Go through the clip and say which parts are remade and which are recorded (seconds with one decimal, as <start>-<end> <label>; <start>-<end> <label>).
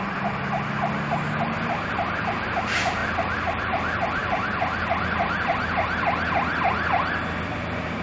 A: 0.0-8.0 recorded